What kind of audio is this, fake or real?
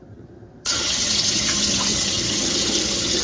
fake